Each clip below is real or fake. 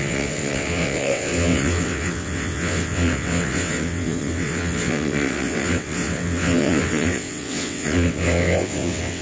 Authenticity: fake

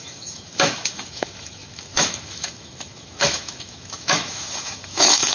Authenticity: fake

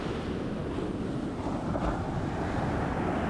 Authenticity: real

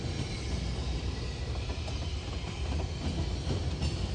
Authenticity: real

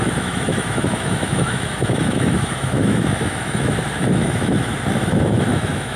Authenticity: fake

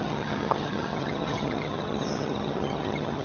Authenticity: fake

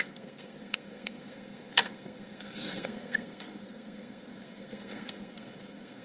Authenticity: fake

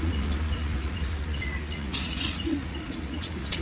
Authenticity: fake